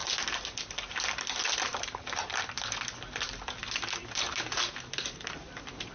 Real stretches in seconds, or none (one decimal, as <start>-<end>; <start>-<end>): 0.0-1.7; 2.3-5.9